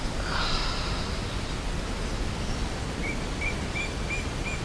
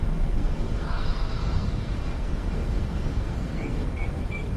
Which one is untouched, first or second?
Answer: first